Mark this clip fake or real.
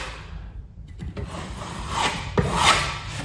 fake